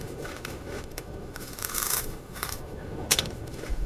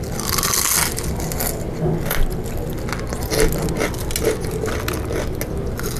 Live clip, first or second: second